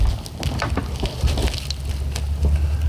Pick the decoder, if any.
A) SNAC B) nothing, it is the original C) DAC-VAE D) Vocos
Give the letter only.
B